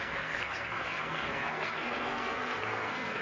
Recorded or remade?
remade